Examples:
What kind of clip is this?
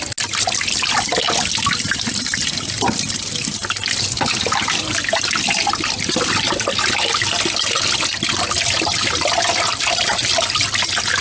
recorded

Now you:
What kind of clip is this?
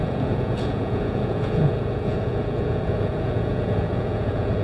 remade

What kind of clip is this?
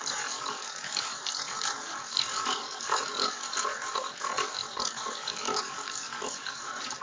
remade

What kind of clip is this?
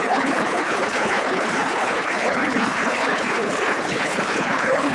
remade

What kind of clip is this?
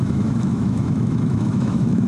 remade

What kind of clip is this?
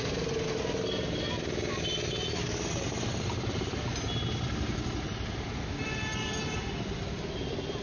recorded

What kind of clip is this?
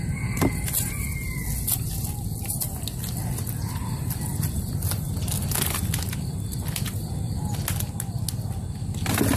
recorded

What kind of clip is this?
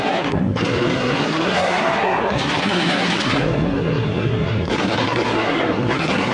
remade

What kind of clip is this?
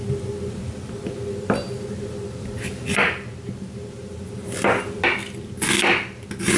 recorded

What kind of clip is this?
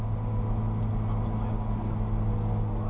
recorded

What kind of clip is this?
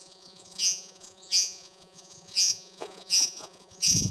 remade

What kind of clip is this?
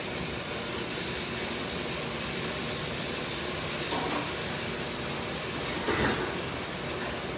recorded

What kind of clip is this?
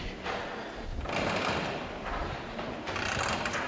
recorded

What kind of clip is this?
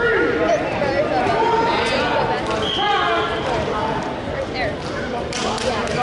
recorded